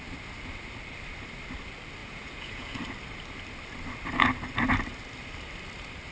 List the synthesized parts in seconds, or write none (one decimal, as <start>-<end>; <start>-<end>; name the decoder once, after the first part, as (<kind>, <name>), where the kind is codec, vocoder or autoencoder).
2.0-2.8 (vocoder, Vocos)